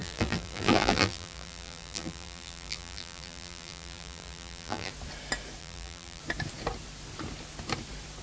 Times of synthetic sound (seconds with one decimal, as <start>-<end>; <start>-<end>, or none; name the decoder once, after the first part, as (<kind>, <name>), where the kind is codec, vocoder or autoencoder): 0.0-4.9 (vocoder, BigVGAN v2); 5.6-6.2